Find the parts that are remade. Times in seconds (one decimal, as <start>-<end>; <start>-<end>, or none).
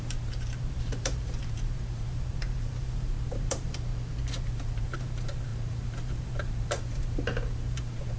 0.0-3.9; 4.4-8.2